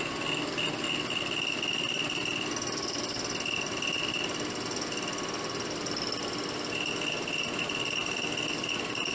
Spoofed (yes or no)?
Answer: no